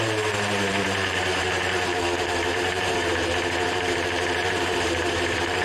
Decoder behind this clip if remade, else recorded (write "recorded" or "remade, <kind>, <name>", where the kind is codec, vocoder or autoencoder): remade, vocoder, BigVGAN v2